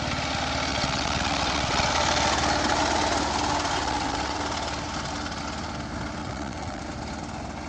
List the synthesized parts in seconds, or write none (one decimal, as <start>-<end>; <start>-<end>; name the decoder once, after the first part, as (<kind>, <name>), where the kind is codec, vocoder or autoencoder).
0.7-1.9 (vocoder, WaveNeXt); 3.8-4.4; 6.2-6.8